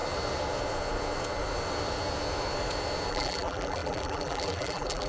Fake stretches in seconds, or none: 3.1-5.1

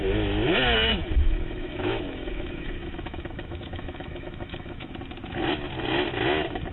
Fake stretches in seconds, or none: 0.9-4.9

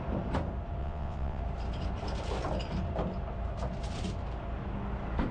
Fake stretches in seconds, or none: 0.8-1.4

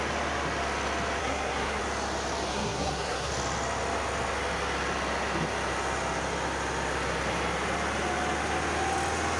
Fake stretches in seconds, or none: 1.2-1.8; 2.5-3.3

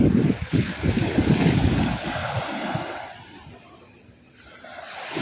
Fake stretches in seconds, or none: 0.0-2.2